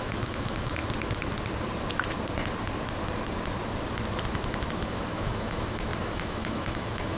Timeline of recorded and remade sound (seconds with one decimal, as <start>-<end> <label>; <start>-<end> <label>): 0.0-0.8 remade; 0.8-4.6 recorded; 4.6-7.2 remade